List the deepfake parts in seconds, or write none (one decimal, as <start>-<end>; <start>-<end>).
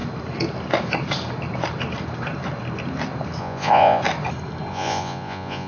3.4-4.0; 4.7-5.7